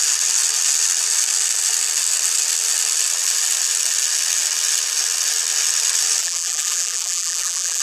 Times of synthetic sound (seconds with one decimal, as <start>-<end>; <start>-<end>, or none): 6.2-7.8